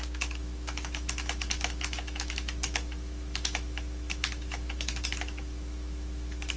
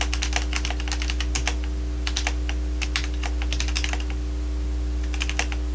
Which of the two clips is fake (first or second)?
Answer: first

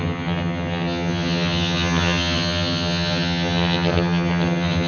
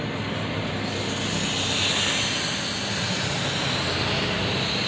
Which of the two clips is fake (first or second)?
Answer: first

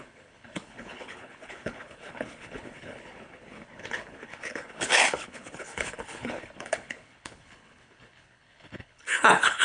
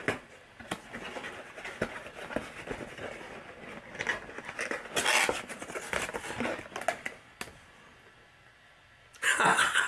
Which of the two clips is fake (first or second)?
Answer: first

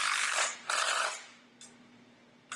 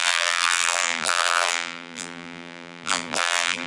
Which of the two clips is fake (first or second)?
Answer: second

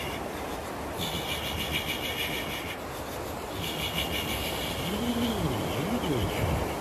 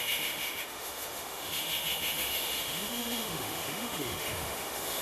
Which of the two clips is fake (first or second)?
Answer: second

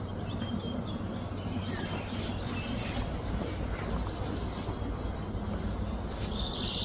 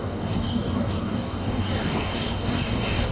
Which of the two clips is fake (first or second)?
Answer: second